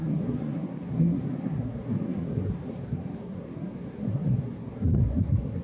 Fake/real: fake